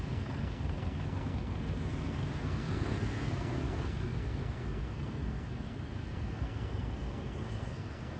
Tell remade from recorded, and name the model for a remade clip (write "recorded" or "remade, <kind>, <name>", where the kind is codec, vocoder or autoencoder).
remade, codec, SNAC